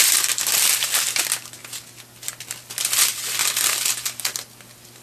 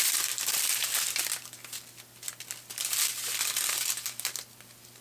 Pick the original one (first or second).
first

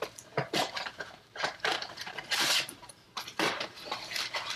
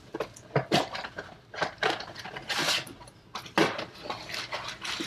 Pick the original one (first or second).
second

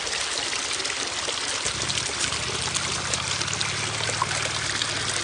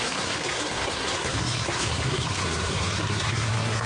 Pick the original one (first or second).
first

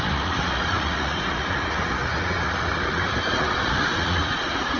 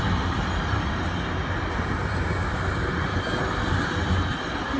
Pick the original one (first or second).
second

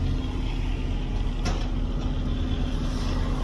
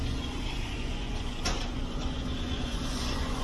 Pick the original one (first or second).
first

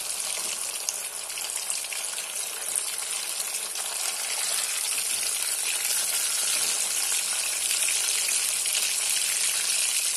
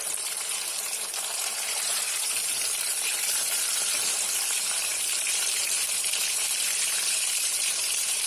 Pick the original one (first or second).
first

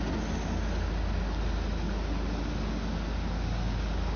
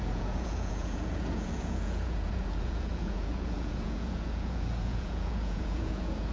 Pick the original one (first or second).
first